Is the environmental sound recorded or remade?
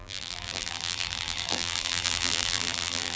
remade